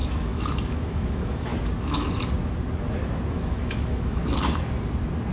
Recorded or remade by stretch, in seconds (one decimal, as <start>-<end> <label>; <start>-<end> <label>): 0.0-1.5 remade; 1.5-3.3 recorded; 3.3-4.2 remade; 4.2-5.3 recorded